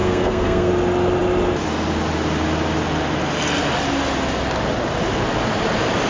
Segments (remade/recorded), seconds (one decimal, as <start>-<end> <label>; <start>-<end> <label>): 0.0-0.7 remade; 0.7-6.1 recorded